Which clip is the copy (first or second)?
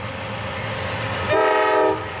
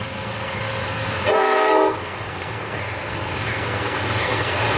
second